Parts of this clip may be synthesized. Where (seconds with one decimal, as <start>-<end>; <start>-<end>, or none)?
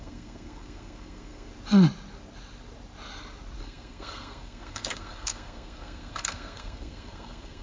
0.0-1.5; 3.6-7.6